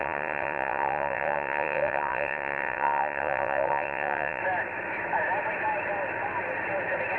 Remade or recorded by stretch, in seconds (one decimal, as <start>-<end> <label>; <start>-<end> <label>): 0.0-4.4 remade; 4.4-7.2 recorded